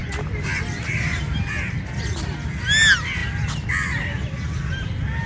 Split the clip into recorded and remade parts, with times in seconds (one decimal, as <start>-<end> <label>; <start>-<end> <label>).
0.0-5.3 recorded